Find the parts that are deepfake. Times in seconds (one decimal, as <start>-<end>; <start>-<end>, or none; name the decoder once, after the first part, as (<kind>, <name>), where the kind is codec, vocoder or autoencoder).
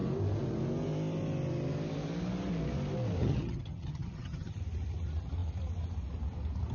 3.2-4.6 (vocoder, HiFi-GAN)